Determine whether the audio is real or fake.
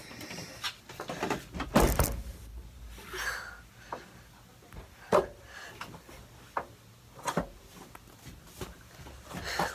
real